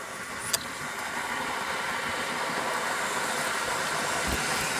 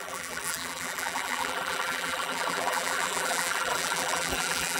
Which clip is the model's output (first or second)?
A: second